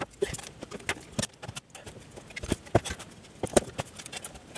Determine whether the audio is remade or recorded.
recorded